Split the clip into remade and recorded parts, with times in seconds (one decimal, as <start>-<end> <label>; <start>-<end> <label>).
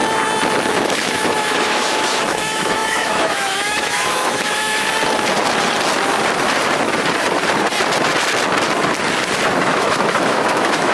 0.0-0.7 recorded; 0.7-4.9 remade; 4.9-9.6 recorded; 9.6-10.9 remade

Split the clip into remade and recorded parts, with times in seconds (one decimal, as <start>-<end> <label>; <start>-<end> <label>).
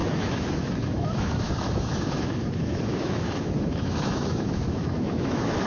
0.0-5.7 remade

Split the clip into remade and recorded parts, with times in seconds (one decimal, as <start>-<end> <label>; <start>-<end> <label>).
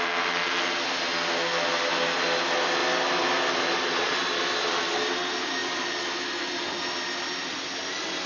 0.0-8.3 recorded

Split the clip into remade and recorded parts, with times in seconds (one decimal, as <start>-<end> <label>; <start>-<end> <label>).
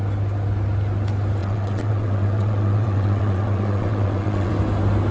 0.0-1.4 recorded; 1.4-4.5 remade; 4.5-5.1 recorded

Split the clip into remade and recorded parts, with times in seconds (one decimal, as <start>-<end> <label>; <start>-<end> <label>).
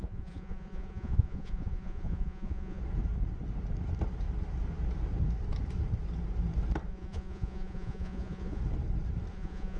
0.0-2.8 remade; 2.8-6.9 recorded; 6.9-8.6 remade; 8.6-9.3 recorded; 9.3-9.8 remade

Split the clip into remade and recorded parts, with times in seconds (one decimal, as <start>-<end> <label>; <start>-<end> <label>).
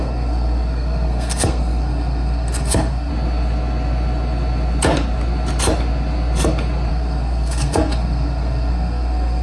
0.0-3.1 remade; 3.1-6.9 recorded; 6.9-9.4 remade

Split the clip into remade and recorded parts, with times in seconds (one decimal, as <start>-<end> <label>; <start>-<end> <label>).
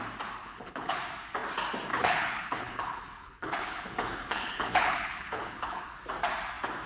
0.0-0.4 recorded; 0.4-1.0 remade; 1.0-1.9 recorded; 1.9-6.0 remade; 6.0-6.9 recorded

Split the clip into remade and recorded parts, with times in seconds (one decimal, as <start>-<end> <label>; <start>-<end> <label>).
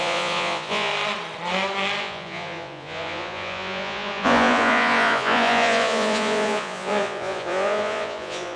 0.0-0.9 remade; 0.9-2.0 recorded; 2.0-8.6 remade